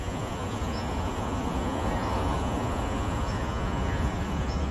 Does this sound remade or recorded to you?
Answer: remade